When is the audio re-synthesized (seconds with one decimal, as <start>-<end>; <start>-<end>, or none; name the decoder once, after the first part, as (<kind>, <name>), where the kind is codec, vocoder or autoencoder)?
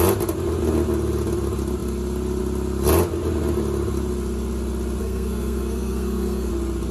5.0-6.5 (codec, SNAC)